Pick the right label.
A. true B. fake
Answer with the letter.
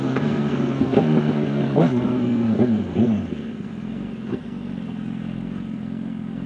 B